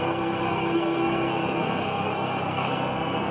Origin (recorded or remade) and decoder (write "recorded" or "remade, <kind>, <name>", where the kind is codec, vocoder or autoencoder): remade, codec, SNAC